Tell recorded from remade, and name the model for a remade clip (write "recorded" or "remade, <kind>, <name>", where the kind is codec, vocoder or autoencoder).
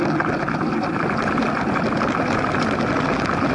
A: recorded